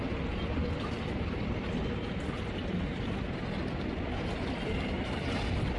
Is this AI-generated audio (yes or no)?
no